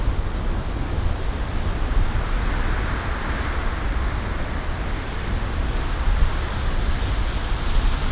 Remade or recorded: recorded